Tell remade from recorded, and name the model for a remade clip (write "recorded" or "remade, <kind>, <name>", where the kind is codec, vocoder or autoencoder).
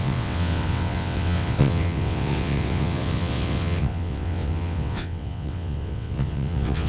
remade, vocoder, WaveNeXt